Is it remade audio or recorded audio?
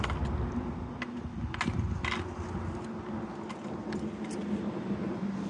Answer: recorded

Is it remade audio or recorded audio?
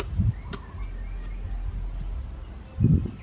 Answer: recorded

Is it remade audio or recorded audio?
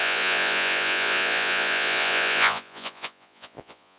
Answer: remade